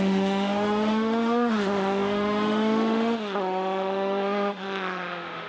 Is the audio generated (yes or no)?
yes